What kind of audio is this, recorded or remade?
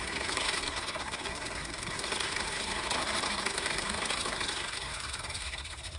remade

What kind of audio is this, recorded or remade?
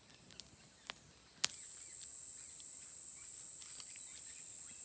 recorded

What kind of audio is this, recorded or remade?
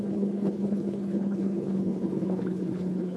remade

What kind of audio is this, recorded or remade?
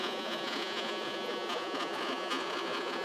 remade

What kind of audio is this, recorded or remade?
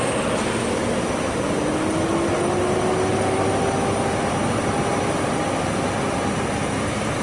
recorded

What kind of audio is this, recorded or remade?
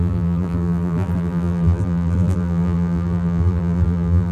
remade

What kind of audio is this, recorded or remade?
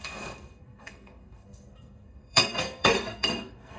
remade